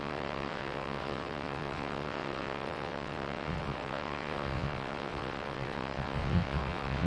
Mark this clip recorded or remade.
remade